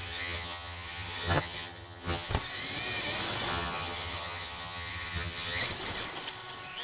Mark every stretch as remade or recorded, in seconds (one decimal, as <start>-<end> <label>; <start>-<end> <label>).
0.0-2.3 remade; 2.3-3.5 recorded; 3.5-5.6 remade; 5.6-6.8 recorded